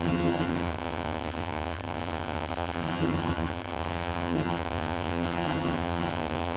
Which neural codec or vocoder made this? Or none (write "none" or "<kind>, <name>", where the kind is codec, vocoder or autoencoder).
vocoder, HiFi-GAN